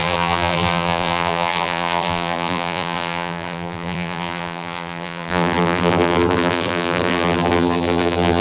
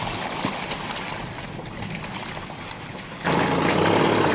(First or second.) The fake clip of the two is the first